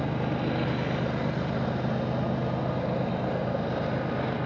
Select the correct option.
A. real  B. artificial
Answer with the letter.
A